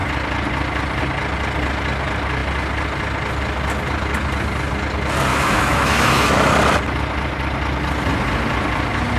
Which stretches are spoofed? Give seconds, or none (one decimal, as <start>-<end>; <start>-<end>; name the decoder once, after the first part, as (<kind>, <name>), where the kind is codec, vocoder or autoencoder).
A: 5.3-6.5 (autoencoder, DAC-VAE)